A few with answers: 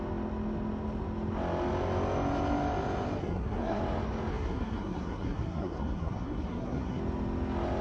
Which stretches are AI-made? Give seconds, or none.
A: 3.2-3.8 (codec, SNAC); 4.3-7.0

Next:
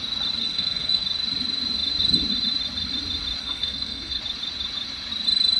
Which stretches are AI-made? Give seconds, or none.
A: 0.4-1.0 (codec, SNAC); 3.4-4.2

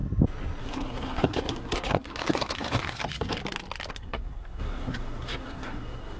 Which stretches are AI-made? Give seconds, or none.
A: 0.6-3.4 (codec, SNAC); 3.9-6.2

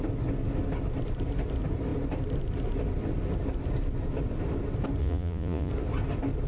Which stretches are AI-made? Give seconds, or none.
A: 5.0-5.7 (vocoder, Vocos)